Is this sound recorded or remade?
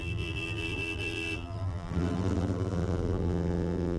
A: remade